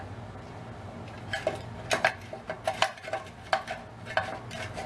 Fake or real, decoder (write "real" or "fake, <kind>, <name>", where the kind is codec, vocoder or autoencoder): real